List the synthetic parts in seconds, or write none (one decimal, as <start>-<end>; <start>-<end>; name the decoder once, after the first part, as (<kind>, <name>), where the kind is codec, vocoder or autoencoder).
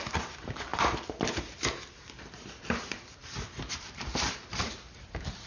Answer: 0.0-3.2 (vocoder, BigVGAN v2); 3.8-5.5